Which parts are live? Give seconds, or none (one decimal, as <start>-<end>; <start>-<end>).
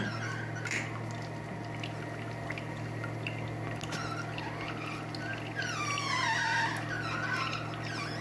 0.0-8.2